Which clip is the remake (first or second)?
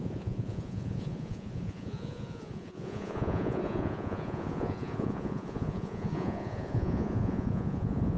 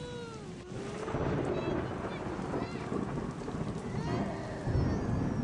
first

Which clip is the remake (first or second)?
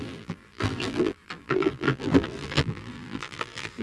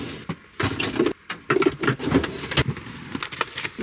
first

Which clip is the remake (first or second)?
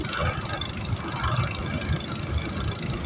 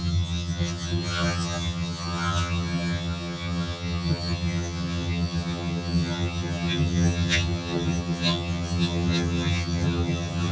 second